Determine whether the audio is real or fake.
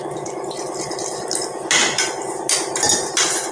real